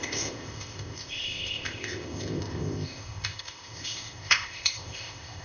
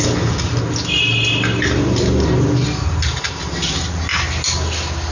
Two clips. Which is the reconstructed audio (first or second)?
first